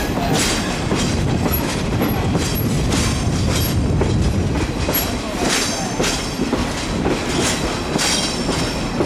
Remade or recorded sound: recorded